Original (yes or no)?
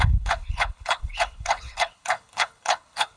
no